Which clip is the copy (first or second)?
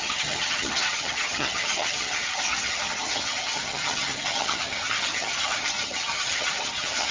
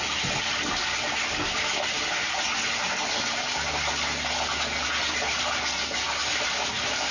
first